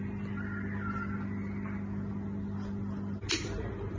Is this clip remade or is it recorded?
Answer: recorded